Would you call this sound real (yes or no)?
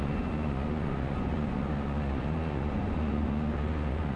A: no